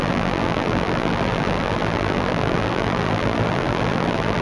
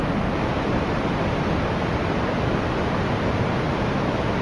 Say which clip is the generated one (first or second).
first